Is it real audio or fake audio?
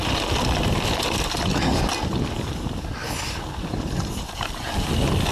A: real